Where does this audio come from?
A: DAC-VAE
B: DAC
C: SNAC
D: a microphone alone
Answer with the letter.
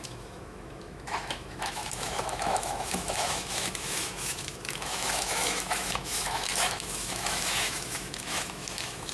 A